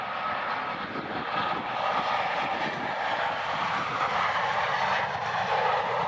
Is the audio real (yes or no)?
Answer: yes